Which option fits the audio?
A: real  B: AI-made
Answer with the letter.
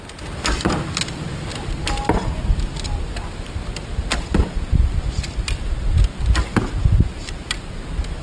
A